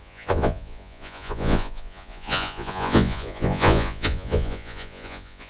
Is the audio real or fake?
fake